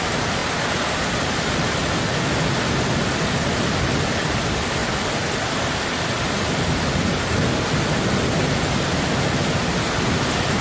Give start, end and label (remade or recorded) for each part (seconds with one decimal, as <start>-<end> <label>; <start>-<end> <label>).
0.0-4.8 remade; 4.8-5.3 recorded; 5.3-10.6 remade